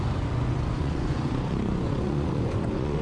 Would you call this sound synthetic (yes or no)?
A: yes